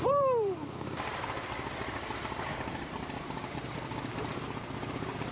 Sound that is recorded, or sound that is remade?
remade